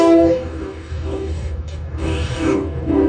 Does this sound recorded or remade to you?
remade